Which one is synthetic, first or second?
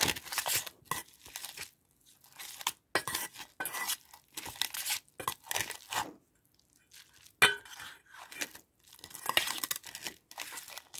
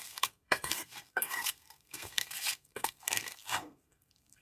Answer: second